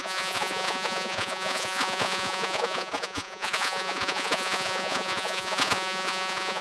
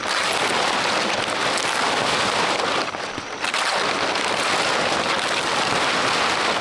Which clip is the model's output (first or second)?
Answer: first